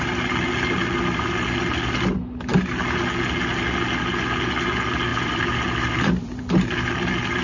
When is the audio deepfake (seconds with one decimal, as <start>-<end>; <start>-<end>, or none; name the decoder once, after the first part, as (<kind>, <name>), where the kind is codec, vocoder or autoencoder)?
5.1-6.4 (vocoder, BigVGAN v2)